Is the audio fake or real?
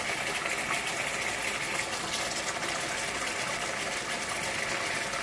real